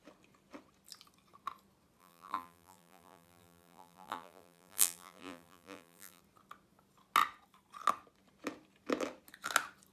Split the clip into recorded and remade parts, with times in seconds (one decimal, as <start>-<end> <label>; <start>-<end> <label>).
0.0-2.0 recorded; 2.0-6.2 remade; 6.2-9.9 recorded